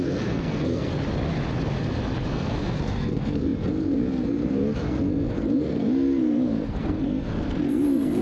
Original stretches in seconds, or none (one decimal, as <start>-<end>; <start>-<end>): 0.9-2.3